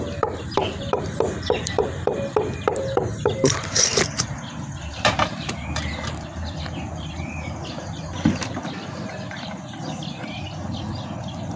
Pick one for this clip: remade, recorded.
remade